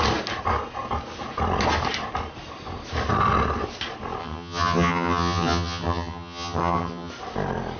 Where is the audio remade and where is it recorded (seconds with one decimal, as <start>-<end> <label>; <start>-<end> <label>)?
0.0-4.2 recorded; 4.2-7.1 remade; 7.1-7.8 recorded